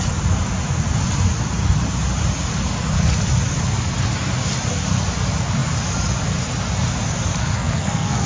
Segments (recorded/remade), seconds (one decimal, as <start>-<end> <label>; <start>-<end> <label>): 0.0-7.4 recorded; 7.4-8.3 remade